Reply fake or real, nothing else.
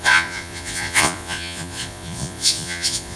fake